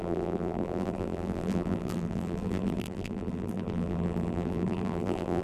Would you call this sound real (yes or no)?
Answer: no